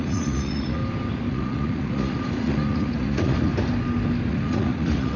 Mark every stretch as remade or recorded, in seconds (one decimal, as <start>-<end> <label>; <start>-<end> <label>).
0.0-0.8 remade; 0.8-1.3 recorded; 1.3-3.5 remade; 3.5-4.3 recorded; 4.3-5.2 remade